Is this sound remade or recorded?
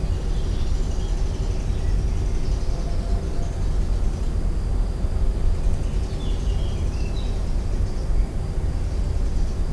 recorded